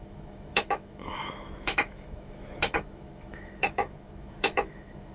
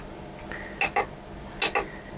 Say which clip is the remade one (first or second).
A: first